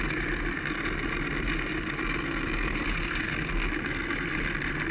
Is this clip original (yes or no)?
yes